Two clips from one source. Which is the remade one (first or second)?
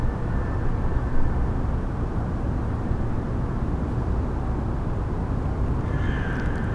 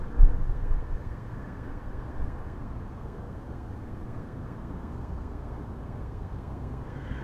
second